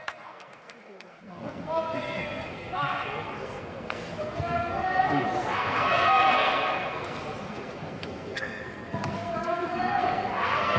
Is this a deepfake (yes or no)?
yes